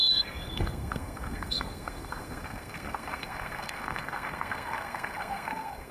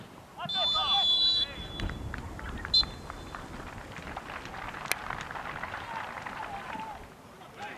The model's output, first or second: first